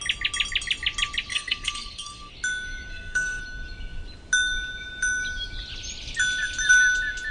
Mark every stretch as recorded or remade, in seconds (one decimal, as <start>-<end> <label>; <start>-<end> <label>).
0.0-1.3 recorded; 1.3-2.3 remade; 2.3-2.9 recorded; 2.9-3.4 remade; 3.4-7.3 recorded

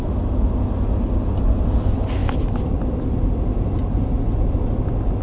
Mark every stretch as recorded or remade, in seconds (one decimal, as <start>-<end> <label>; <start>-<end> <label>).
0.0-5.2 recorded

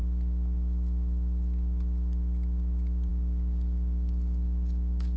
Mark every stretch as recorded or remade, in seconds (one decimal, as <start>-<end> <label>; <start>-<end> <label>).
0.0-5.2 recorded

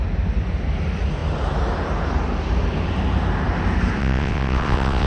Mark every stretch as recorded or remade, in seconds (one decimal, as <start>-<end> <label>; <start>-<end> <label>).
0.0-4.0 recorded; 4.0-5.1 remade

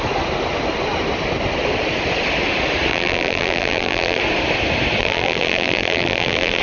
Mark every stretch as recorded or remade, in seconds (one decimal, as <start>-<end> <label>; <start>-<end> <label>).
0.0-2.9 recorded; 2.9-4.2 remade; 4.2-5.0 recorded; 5.0-6.6 remade

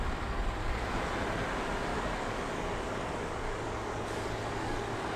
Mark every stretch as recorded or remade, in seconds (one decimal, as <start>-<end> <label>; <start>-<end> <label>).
0.0-0.6 recorded; 0.6-1.1 remade; 1.1-1.9 recorded; 1.9-5.2 remade

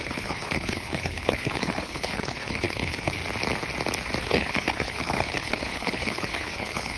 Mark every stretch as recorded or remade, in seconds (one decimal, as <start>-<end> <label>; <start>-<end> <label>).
0.0-3.2 remade; 3.2-4.2 recorded; 4.2-7.0 remade

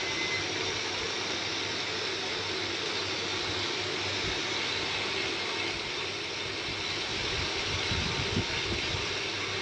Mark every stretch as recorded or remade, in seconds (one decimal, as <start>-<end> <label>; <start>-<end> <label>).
0.0-7.1 recorded; 7.1-8.4 remade; 8.4-9.6 recorded